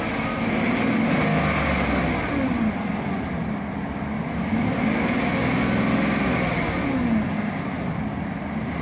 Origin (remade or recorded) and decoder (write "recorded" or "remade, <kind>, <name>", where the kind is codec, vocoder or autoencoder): recorded